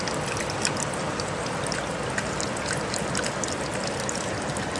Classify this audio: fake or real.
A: real